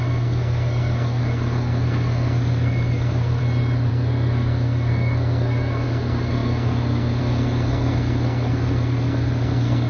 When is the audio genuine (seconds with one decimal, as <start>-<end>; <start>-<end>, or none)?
3.4-3.9